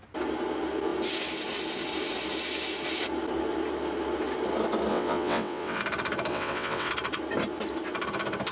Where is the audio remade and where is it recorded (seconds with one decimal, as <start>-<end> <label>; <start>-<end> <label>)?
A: 0.0-4.9 recorded; 4.9-5.8 remade; 5.8-6.3 recorded; 6.3-6.9 remade; 6.9-8.5 recorded